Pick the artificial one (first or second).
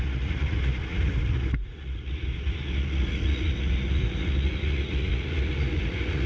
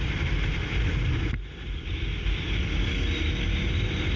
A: first